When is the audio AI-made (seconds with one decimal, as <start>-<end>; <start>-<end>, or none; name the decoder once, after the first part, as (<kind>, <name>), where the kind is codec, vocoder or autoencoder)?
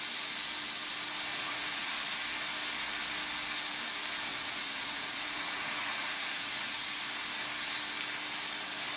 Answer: 1.3-1.9 (vocoder, Vocos); 4.3-7.0